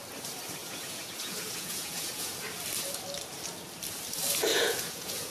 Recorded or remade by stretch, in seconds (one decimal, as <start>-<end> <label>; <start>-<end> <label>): 0.0-0.6 recorded; 0.6-2.4 remade; 2.4-4.5 recorded; 4.5-5.3 remade